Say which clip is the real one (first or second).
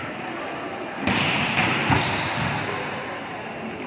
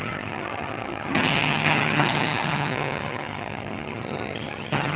first